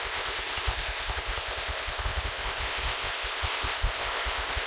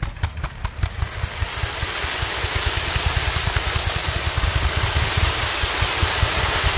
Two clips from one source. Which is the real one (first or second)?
second